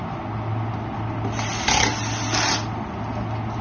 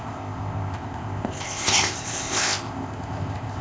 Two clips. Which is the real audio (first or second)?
first